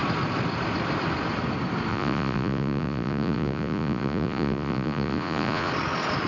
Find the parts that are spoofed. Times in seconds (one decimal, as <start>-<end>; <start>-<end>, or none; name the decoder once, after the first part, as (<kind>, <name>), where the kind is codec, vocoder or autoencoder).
1.9-5.7 (vocoder, Vocos)